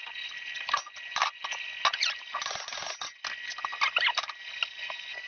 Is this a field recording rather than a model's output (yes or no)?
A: yes